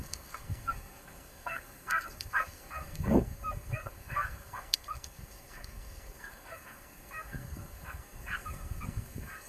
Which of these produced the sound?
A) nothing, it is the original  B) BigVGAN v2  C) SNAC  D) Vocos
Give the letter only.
C